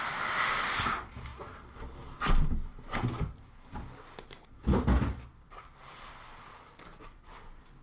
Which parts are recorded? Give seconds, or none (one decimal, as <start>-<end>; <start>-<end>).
1.3-6.0